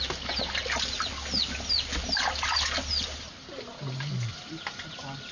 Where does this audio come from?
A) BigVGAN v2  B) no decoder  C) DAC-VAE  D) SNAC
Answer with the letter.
B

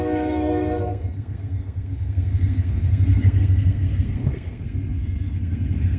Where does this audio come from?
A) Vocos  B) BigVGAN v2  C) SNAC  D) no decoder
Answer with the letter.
C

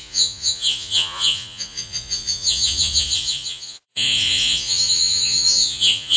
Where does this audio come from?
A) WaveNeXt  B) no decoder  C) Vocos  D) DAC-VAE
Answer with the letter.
C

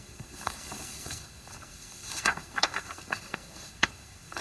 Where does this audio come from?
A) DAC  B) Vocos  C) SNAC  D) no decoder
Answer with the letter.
C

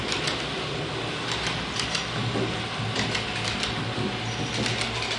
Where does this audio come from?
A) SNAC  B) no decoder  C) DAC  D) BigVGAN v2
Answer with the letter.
B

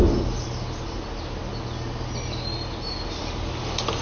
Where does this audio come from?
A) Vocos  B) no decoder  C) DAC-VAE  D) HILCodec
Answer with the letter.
B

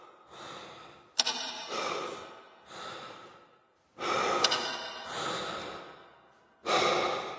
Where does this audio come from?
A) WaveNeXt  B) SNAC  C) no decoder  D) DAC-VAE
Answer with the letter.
C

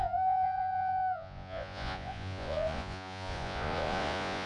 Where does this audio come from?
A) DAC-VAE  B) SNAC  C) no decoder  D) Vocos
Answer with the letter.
D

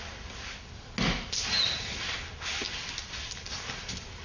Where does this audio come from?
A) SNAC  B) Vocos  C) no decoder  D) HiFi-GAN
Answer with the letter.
C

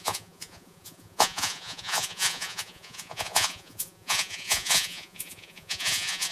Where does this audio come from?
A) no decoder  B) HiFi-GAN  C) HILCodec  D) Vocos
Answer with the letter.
D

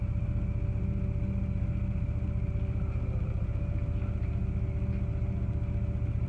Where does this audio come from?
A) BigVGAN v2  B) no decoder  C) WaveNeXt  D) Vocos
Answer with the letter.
B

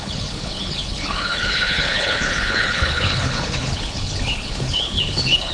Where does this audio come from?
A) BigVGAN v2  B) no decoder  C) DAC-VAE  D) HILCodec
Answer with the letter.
D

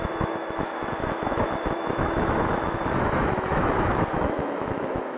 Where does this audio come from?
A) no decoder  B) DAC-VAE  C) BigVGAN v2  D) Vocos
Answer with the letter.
B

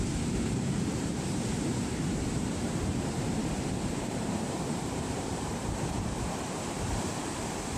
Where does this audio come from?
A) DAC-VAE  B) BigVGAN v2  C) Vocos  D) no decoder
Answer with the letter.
B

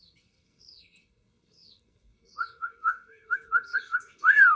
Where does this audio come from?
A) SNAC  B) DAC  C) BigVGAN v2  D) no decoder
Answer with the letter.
A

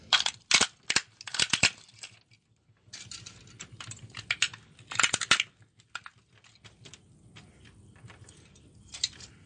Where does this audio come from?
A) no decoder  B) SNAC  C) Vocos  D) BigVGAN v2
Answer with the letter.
A